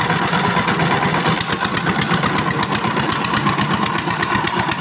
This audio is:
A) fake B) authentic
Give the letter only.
B